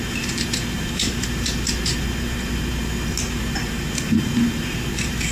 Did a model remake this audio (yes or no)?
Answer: yes